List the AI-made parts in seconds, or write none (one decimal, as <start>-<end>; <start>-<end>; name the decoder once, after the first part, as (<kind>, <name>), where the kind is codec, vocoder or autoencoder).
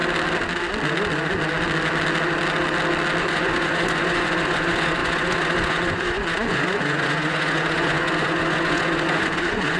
3.2-9.8 (vocoder, Vocos)